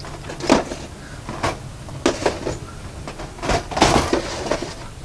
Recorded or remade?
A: recorded